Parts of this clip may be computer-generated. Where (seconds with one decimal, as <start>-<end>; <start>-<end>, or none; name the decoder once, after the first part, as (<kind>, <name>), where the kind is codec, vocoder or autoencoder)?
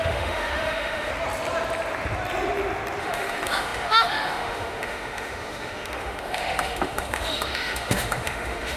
0.0-1.1 (autoencoder, DAC-VAE); 3.0-8.8